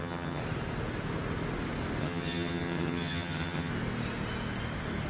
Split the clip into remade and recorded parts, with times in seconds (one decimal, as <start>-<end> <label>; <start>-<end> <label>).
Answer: 0.0-0.4 remade; 0.4-2.0 recorded; 2.0-3.7 remade; 3.7-5.1 recorded